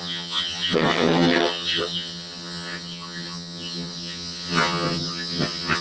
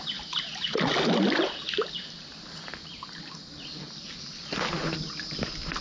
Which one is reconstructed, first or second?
first